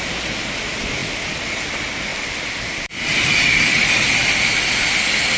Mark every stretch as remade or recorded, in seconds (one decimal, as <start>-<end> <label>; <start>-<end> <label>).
0.0-1.0 recorded; 1.0-1.5 remade; 1.5-2.1 recorded; 2.1-2.9 remade; 2.9-3.7 recorded; 3.7-4.9 remade; 4.9-5.4 recorded